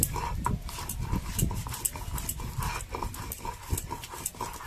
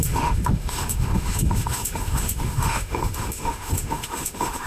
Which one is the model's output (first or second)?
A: second